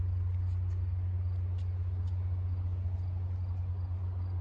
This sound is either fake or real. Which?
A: real